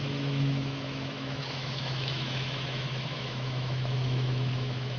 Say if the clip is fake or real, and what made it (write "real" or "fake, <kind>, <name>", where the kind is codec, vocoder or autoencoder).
fake, autoencoder, DAC-VAE